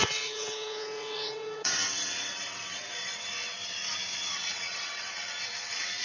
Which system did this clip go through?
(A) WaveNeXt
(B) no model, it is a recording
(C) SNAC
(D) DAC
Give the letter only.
A